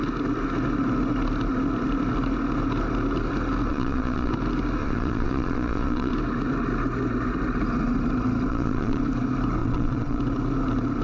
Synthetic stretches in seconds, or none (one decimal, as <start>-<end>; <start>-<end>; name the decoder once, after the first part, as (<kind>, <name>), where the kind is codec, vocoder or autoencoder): 3.7-4.3 (vocoder, Vocos); 4.8-6.1; 8.5-9.0; 9.6-10.2